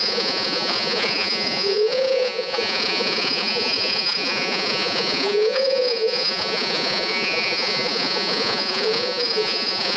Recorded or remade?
remade